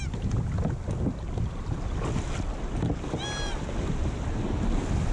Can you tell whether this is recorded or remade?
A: recorded